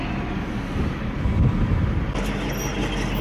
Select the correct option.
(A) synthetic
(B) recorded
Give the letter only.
B